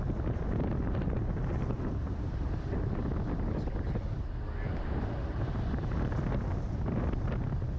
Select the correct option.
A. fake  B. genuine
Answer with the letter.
B